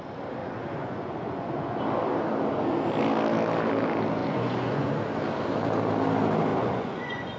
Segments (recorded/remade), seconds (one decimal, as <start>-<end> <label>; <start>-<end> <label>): 0.0-0.4 recorded; 0.4-1.8 remade; 1.8-4.2 recorded; 4.2-4.9 remade; 4.9-6.5 recorded; 6.5-7.4 remade